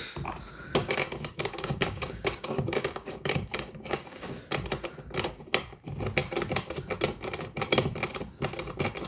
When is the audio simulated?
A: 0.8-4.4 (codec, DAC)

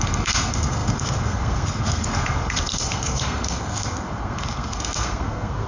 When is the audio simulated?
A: 0.0-5.7 (codec, SNAC)